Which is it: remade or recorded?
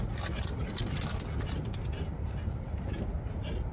recorded